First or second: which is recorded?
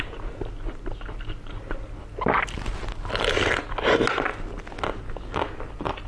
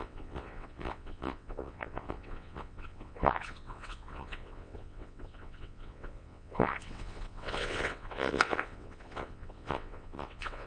first